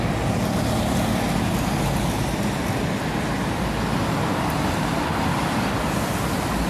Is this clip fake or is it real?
real